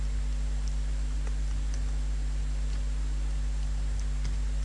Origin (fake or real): real